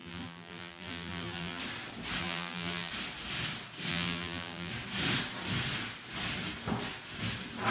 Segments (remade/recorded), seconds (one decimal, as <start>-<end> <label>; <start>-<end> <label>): 0.0-1.6 remade; 1.6-2.2 recorded; 2.2-2.9 remade; 2.9-3.9 recorded; 3.9-4.7 remade; 4.7-7.7 recorded